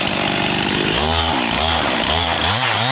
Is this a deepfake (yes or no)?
yes